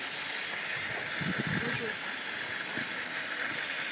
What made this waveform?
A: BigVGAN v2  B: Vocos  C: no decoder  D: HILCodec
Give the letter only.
C